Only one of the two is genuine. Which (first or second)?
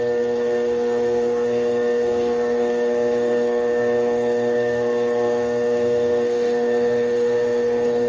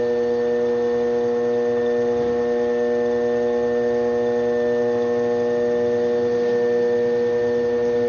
second